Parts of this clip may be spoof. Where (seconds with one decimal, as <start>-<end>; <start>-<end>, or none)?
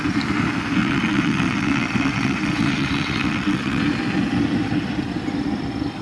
0.8-3.8